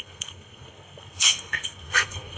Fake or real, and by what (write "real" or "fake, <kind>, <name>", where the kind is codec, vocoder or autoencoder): fake, codec, SNAC